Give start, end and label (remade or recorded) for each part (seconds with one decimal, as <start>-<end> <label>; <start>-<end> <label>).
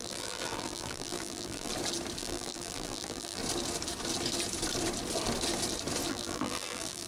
0.0-1.7 remade; 1.7-2.2 recorded; 2.2-3.4 remade; 3.4-6.1 recorded; 6.1-7.1 remade